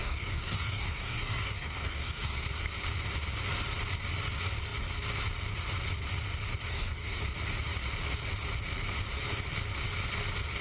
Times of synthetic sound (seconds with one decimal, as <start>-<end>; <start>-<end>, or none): 0.0-2.4; 6.7-7.2